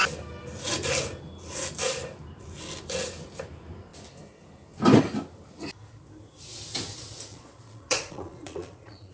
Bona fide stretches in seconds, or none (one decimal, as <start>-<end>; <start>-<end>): 0.0-7.3